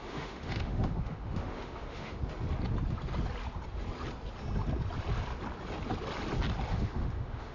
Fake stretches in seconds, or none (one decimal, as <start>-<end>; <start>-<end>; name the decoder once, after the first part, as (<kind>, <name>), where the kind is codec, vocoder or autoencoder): 0.0-2.2 (autoencoder, DAC-VAE); 6.7-7.5